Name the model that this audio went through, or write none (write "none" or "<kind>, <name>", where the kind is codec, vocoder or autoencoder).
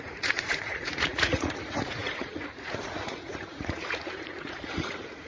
vocoder, Vocos